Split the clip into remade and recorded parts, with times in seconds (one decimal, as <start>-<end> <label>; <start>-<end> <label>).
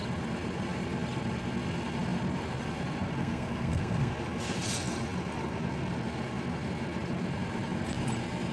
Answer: 0.0-3.2 recorded; 3.2-4.1 remade; 4.1-8.5 recorded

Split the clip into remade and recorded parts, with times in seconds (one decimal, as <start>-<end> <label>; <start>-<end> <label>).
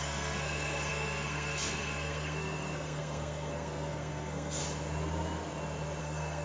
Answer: 0.0-4.6 remade; 4.6-6.0 recorded; 6.0-6.4 remade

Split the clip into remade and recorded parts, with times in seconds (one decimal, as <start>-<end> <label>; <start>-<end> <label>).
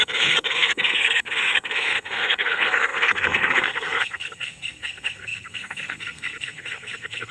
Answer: 0.0-7.3 remade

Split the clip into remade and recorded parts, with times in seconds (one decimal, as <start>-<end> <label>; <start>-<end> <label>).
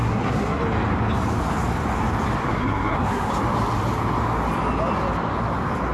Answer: 0.0-0.6 remade; 0.6-2.4 recorded; 2.4-3.3 remade; 3.3-5.9 recorded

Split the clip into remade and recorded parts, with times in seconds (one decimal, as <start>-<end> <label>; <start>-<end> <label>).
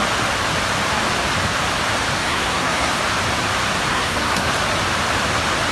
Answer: 0.0-2.2 recorded; 2.2-3.0 remade; 3.0-3.9 recorded; 3.9-4.5 remade; 4.5-5.7 recorded